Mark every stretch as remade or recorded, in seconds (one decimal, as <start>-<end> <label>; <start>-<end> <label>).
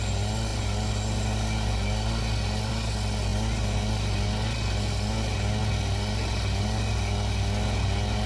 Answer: 0.0-8.3 recorded